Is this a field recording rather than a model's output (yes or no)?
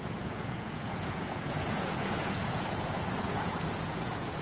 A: no